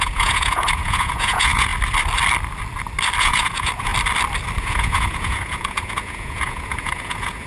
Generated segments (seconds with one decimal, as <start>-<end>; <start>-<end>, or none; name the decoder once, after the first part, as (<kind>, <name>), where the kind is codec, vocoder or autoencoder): 0.0-1.7 (vocoder, Vocos); 3.2-3.9; 4.6-7.5